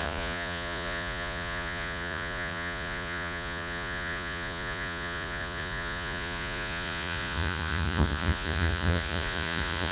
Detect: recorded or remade remade